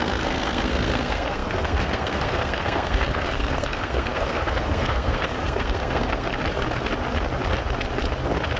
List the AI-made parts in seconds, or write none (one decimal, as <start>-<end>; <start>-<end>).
0.0-6.3